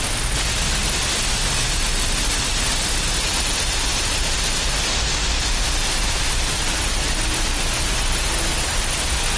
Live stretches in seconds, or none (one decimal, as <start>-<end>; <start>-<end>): 0.0-9.4